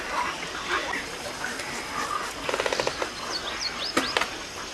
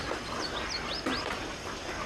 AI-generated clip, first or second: second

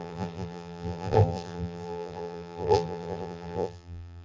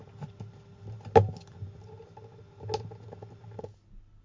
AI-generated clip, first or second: first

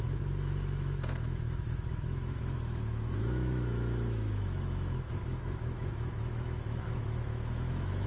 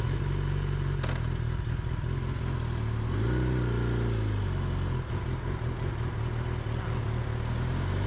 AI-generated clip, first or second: first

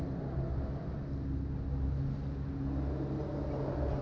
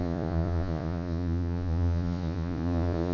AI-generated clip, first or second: second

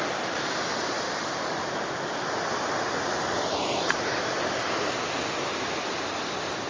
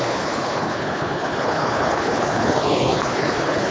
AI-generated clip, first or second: second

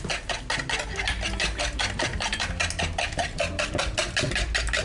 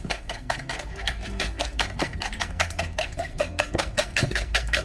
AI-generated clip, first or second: second